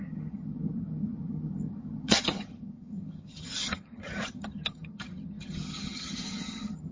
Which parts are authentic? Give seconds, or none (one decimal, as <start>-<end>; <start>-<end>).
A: none